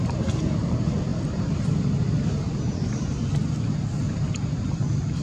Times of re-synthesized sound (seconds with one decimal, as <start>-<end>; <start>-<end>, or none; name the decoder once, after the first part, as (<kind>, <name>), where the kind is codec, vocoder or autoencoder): 1.1-2.4 (vocoder, BigVGAN v2)